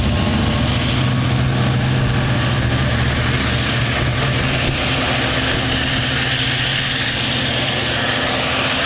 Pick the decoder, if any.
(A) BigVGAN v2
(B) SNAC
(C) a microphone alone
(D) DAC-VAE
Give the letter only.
C